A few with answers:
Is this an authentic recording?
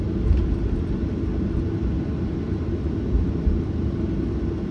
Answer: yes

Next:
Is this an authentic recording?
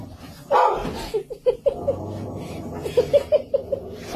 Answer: yes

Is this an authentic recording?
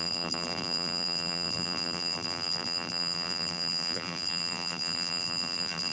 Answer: no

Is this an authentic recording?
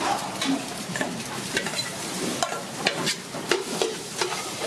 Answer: no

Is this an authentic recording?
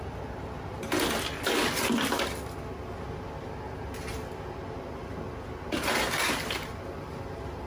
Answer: yes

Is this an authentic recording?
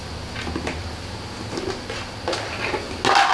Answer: yes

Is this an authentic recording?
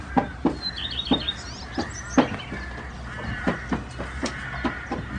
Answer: yes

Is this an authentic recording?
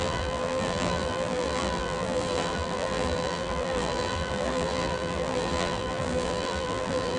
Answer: no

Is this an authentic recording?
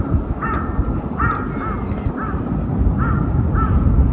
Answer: yes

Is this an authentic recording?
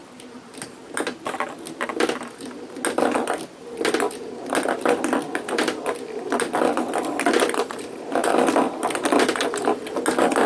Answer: yes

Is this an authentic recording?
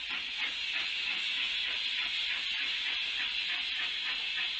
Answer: yes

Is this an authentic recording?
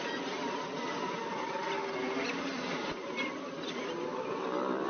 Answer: yes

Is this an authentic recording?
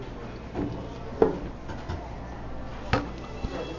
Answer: yes